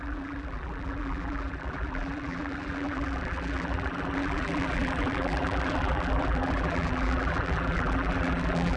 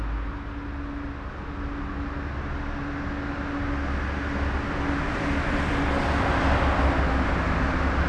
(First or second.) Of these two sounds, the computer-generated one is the first